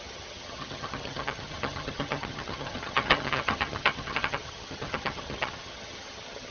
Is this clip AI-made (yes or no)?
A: yes